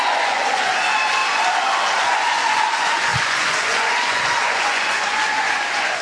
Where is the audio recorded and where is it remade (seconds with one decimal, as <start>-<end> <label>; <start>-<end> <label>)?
0.0-1.2 remade; 1.2-2.0 recorded; 2.0-6.0 remade